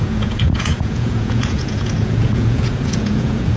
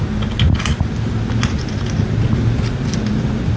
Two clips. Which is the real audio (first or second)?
second